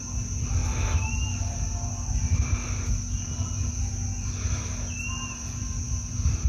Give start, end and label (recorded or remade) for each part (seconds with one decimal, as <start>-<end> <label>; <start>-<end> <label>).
0.0-6.5 recorded